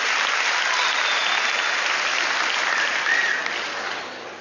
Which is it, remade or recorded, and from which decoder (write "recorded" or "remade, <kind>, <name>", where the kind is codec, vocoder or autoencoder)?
recorded